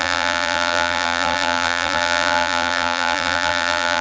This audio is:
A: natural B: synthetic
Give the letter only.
B